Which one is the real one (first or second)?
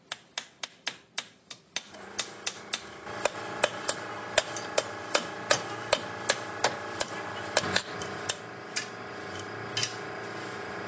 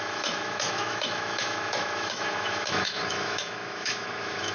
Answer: first